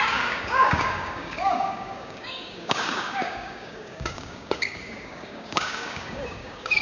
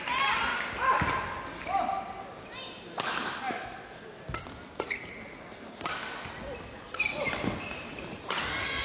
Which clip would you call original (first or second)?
second